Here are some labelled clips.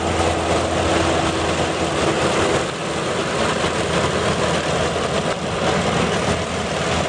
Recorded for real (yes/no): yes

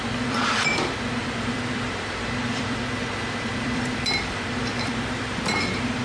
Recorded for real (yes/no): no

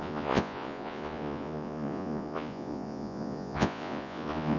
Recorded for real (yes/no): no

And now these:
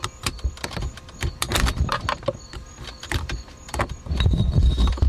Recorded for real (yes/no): yes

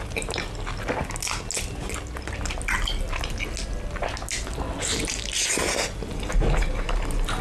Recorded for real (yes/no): yes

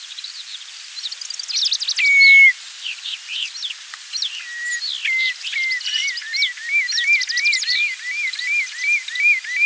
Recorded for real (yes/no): yes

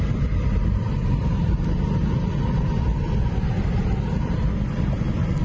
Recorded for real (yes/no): yes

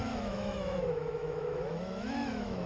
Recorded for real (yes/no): no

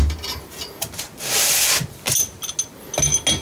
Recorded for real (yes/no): yes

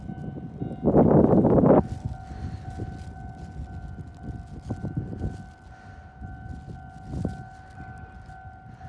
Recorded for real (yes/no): yes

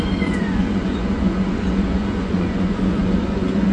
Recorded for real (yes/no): no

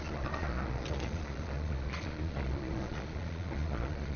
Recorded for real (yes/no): no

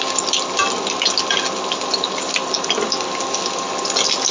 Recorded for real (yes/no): yes